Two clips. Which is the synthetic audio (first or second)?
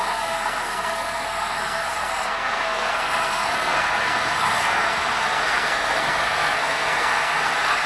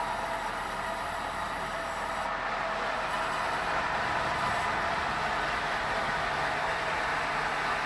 first